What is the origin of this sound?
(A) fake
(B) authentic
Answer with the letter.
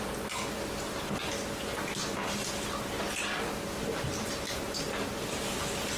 B